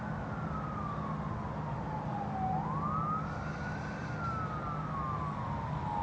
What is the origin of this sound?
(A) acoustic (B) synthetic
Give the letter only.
A